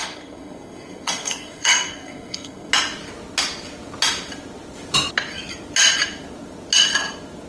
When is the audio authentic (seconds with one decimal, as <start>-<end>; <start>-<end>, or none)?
2.7-7.5